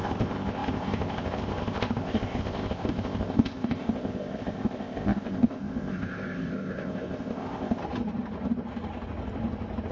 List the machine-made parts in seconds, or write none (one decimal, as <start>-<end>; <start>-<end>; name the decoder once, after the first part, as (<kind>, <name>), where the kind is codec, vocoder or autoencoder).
0.0-7.8 (codec, ZipCodec)